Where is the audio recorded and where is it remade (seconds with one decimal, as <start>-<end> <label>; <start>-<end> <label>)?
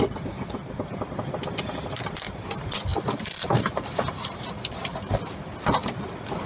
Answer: 0.0-2.9 recorded; 2.9-5.3 remade; 5.3-6.5 recorded